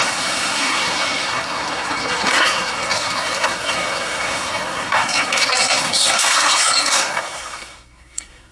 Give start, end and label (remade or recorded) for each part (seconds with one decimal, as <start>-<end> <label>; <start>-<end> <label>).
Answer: 0.0-8.5 remade